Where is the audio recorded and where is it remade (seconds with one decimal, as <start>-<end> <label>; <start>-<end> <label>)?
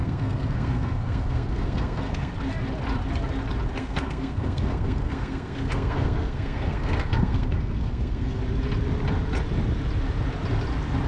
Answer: 0.0-2.3 remade; 2.3-3.8 recorded; 3.8-8.4 remade; 8.4-11.1 recorded